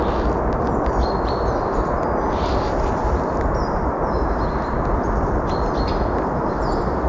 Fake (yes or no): no